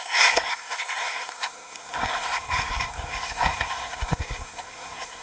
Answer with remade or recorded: remade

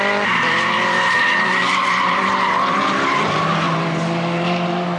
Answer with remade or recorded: remade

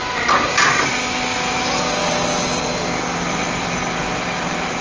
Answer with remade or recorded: recorded